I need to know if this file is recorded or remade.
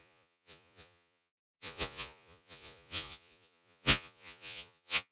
remade